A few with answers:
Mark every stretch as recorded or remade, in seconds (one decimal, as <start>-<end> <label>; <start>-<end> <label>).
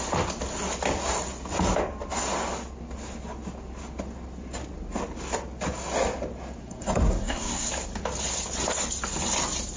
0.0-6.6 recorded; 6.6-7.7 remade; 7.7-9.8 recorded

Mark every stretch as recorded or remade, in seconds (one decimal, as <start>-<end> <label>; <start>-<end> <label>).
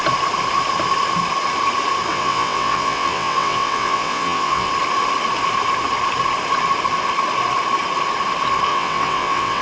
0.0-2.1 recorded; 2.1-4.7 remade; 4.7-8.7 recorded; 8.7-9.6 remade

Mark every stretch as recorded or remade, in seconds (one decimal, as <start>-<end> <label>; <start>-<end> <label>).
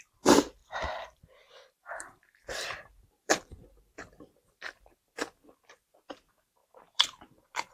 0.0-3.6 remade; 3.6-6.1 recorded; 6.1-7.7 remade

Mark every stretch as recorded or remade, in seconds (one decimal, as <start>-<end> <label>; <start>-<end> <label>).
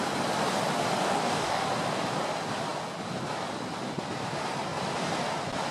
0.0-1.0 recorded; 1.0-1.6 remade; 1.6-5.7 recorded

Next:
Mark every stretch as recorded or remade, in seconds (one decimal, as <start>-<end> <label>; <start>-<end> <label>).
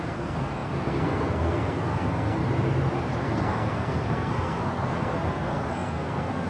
0.0-2.4 remade; 2.4-3.2 recorded; 3.2-6.5 remade